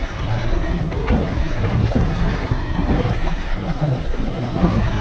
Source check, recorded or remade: remade